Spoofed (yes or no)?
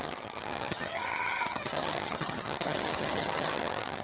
yes